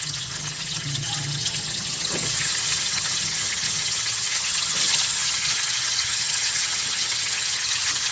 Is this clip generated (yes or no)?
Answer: yes